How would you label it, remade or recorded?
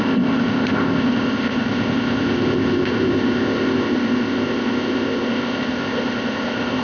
remade